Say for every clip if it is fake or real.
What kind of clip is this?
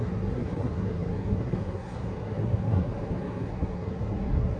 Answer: fake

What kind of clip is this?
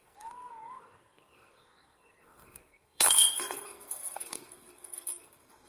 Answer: fake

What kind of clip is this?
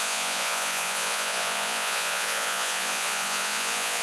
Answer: fake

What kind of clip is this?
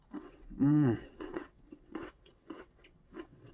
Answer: fake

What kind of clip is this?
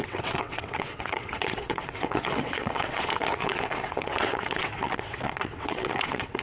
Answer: fake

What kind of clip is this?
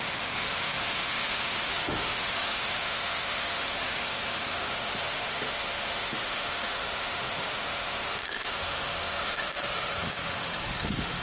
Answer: fake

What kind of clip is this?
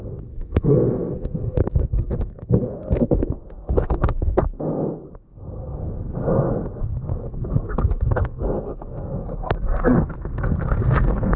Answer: fake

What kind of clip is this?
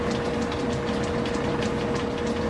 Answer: real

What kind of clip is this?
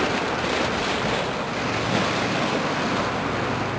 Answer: real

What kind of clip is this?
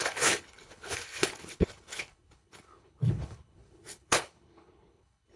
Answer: fake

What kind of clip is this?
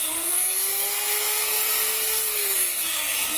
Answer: fake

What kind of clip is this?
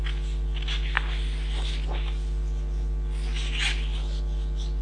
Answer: real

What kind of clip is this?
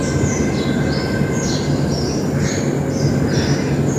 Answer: real